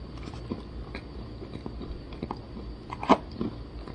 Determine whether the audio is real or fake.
real